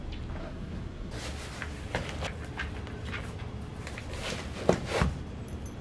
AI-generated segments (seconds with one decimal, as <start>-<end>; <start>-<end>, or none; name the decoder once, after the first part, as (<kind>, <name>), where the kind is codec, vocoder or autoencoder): 0.4-1.1 (codec, SNAC)